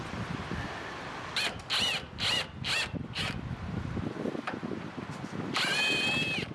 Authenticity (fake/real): real